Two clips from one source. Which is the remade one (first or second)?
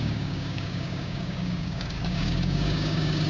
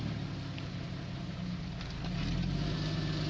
first